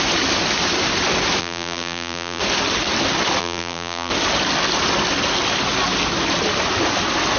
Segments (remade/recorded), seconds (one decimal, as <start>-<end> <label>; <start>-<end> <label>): 0.0-1.4 recorded; 1.4-2.4 remade; 2.4-3.4 recorded; 3.4-4.1 remade; 4.1-7.4 recorded